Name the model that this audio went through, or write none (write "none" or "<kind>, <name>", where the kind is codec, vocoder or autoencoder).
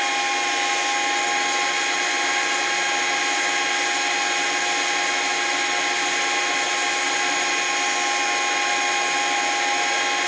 none